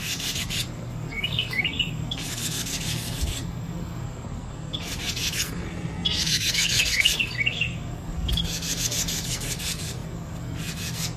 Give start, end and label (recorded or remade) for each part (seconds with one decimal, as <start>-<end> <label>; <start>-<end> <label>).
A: 0.0-11.2 remade